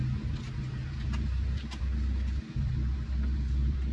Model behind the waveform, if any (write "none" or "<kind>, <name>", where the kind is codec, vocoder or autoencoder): none